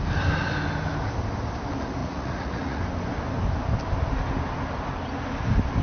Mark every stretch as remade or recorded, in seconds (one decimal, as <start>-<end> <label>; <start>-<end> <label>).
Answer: 0.0-2.0 recorded; 2.0-2.8 remade; 2.8-5.8 recorded